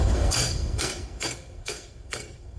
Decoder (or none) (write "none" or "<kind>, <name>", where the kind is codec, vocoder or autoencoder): codec, SNAC